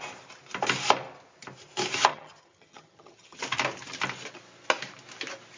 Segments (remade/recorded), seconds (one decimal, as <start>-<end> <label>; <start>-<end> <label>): 0.0-2.1 recorded; 2.1-3.4 remade; 3.4-5.6 recorded